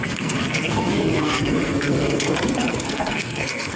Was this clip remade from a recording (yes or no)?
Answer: yes